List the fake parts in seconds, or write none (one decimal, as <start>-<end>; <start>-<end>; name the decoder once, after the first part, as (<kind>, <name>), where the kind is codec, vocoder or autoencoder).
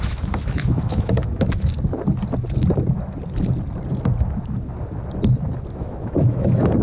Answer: 0.0-1.7 (autoencoder, DAC-VAE); 5.8-6.8